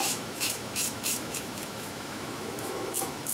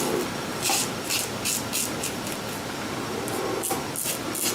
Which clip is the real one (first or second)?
second